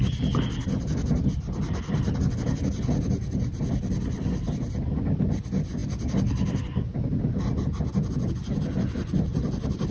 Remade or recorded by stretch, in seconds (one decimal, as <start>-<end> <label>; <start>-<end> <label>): 0.0-9.9 recorded